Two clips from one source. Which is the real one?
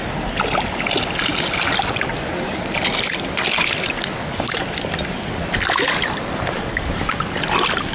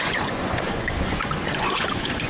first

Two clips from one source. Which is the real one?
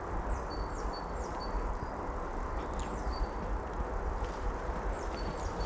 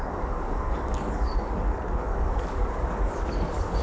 first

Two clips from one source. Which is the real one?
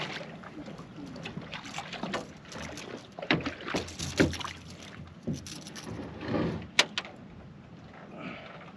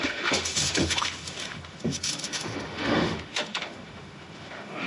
first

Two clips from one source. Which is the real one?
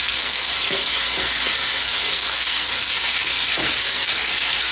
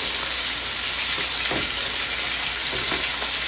second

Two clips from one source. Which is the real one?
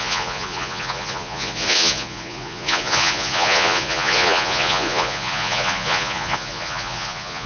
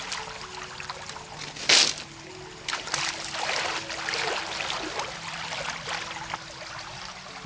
second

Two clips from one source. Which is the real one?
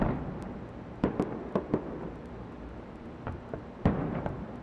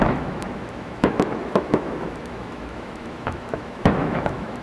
first